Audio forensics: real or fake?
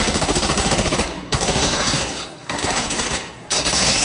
fake